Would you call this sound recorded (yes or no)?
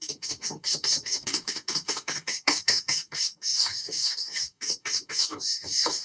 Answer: no